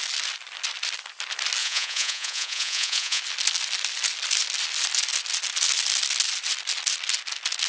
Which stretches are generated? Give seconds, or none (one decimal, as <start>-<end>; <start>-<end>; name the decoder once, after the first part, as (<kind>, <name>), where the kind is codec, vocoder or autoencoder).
1.6-3.2 (vocoder, Vocos)